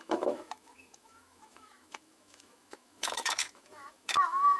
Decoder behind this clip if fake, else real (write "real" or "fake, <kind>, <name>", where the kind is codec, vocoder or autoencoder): fake, autoencoder, DAC-VAE